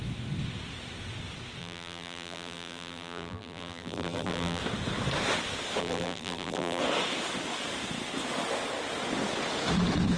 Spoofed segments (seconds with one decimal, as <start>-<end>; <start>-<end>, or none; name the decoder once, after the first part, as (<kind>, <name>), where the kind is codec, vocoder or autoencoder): 1.6-4.6 (vocoder, BigVGAN v2); 5.8-6.8